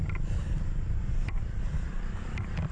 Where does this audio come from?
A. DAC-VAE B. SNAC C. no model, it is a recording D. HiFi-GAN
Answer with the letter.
C